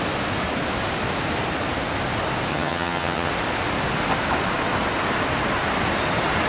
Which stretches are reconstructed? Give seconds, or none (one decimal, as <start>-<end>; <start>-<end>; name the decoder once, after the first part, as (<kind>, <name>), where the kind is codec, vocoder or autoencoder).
2.5-3.3 (vocoder, HiFi-GAN)

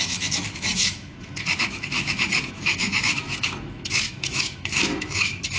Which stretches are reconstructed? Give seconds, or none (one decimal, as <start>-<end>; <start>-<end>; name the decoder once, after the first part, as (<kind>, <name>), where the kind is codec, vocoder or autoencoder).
0.0-5.6 (autoencoder, DAC-VAE)